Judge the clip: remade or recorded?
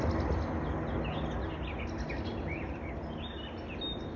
recorded